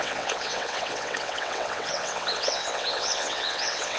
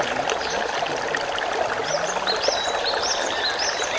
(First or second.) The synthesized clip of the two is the first